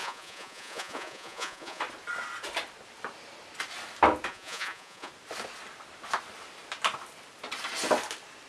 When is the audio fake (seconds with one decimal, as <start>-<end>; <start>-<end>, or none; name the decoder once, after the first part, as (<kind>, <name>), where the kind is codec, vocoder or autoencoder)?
0.0-1.8 (vocoder, Vocos); 4.3-5.1